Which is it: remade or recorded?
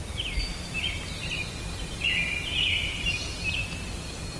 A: recorded